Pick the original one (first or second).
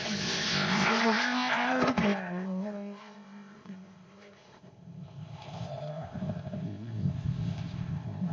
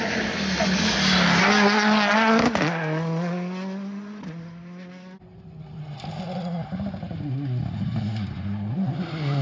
second